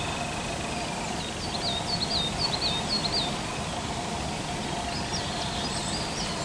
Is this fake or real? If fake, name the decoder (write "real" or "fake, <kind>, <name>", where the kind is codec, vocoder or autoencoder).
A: real